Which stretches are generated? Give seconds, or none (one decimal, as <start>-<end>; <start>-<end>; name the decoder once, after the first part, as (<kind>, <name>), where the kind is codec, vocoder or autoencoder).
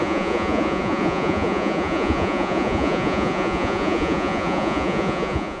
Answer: 0.0-5.6 (vocoder, Vocos)